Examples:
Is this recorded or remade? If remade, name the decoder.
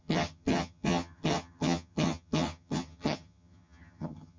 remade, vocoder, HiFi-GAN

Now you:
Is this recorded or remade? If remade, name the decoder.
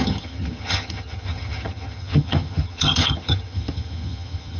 remade, vocoder, HiFi-GAN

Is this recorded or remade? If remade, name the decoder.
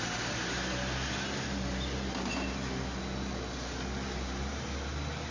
recorded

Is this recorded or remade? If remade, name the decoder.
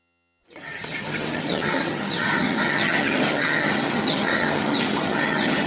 remade, vocoder, HiFi-GAN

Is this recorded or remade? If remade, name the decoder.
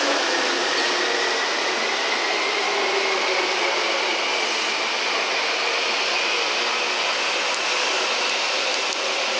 recorded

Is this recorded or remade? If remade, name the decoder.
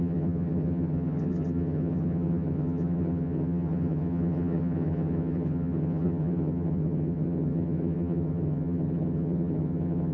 remade, vocoder, HiFi-GAN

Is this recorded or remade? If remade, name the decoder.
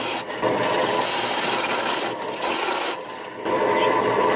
recorded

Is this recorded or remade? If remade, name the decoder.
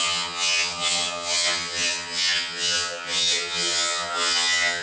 remade, vocoder, HiFi-GAN